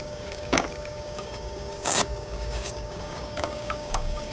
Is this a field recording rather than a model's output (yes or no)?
no